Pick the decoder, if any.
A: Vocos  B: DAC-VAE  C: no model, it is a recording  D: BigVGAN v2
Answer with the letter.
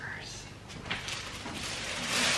C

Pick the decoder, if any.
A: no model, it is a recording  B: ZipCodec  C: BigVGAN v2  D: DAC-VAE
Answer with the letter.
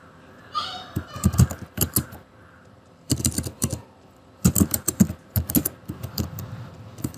A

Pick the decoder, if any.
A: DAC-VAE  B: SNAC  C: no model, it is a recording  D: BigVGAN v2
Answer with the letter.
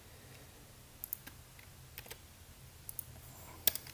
C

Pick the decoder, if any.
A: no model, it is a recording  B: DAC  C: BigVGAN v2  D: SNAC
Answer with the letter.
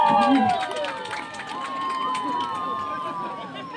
A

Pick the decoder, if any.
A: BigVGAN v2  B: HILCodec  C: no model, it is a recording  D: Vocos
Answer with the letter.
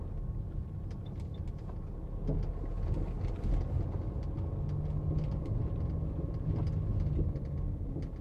C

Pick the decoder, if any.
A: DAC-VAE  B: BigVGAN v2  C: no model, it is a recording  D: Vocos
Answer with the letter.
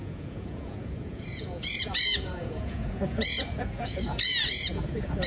D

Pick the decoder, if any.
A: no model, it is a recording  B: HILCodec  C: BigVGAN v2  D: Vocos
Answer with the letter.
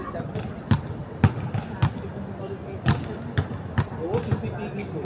A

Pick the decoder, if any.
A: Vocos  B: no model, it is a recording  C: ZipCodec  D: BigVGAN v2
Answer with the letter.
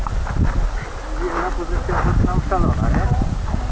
B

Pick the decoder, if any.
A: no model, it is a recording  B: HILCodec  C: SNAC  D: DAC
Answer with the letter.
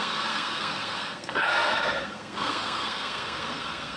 C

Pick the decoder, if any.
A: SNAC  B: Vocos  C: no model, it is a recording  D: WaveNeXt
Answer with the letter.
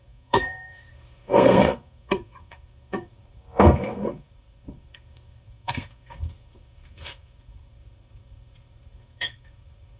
A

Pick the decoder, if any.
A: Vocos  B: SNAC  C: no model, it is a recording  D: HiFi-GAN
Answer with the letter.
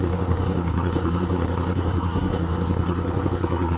B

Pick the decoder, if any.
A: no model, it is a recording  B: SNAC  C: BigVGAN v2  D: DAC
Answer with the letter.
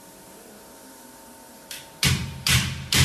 C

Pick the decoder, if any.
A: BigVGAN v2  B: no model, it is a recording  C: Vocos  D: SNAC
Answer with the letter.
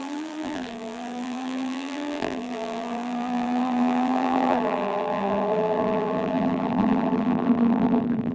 A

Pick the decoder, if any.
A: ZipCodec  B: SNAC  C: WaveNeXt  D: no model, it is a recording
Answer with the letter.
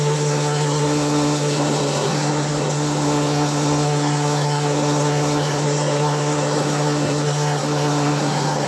B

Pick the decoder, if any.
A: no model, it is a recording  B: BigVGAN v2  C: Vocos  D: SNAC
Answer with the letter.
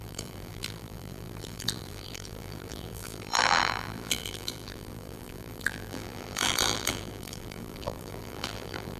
B